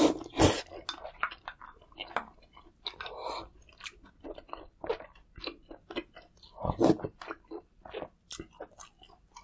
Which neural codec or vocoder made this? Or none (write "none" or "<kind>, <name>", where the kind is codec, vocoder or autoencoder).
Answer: none